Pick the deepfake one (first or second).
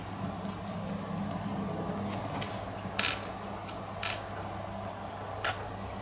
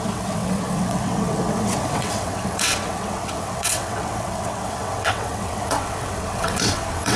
second